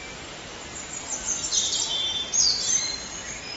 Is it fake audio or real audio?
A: real